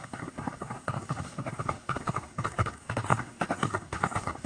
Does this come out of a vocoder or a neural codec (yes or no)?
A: yes